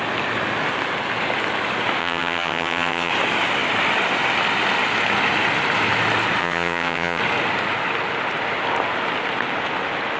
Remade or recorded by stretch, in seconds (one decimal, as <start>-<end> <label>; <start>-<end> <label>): 0.0-2.0 recorded; 2.0-3.1 remade; 3.1-6.4 recorded; 6.4-7.2 remade; 7.2-10.2 recorded